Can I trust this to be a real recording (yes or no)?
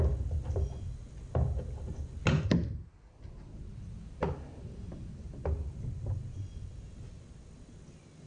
yes